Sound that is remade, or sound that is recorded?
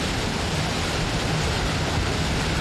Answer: recorded